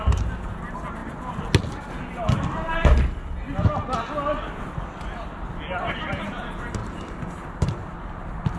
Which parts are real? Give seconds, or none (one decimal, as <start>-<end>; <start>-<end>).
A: 1.0-5.9